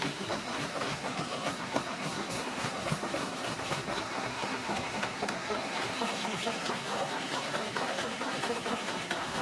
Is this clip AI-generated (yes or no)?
yes